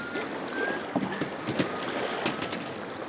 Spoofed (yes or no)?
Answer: no